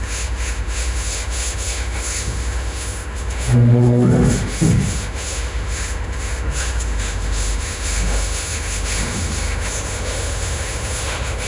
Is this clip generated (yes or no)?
yes